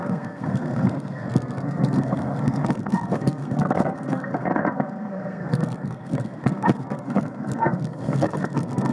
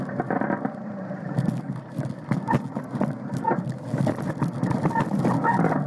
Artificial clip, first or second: first